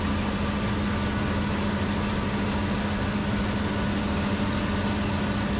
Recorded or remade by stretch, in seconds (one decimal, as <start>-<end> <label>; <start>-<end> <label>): 0.0-5.6 recorded